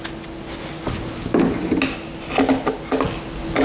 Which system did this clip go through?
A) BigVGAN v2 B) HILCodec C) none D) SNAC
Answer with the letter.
C